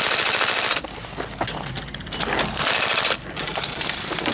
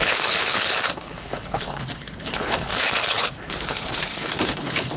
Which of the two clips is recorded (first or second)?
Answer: first